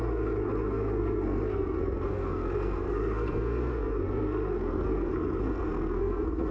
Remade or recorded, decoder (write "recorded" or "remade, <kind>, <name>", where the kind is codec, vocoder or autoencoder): remade, codec, SNAC